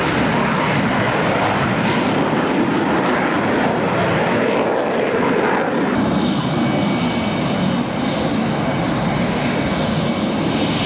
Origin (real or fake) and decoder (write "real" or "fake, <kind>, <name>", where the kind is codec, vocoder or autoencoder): real